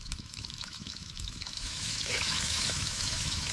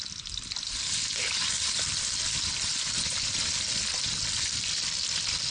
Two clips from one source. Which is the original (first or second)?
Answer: second